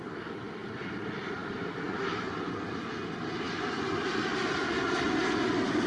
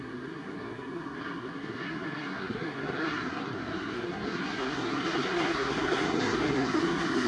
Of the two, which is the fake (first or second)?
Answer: second